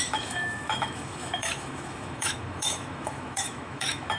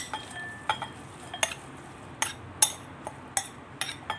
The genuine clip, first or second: second